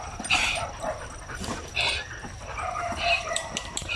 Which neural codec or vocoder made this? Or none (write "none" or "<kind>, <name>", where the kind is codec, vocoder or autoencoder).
vocoder, BigVGAN v2